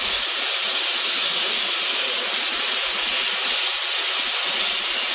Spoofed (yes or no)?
no